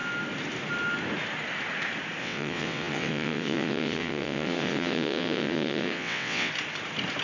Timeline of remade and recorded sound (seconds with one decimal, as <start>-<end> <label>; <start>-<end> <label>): 0.0-2.2 recorded; 2.2-6.5 remade; 6.5-7.2 recorded